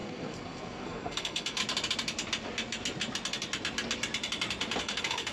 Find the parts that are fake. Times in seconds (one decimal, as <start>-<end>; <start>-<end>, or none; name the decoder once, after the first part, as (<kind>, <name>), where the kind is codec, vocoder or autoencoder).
0.0-1.6 (codec, SNAC); 4.8-5.3